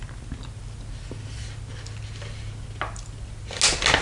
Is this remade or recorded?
recorded